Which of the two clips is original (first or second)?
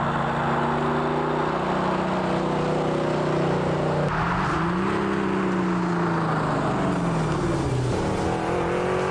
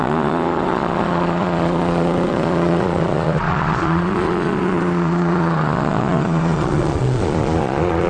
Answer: first